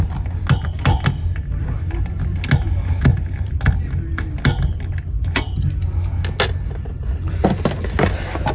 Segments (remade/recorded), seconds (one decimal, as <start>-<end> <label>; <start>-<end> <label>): 0.0-8.5 recorded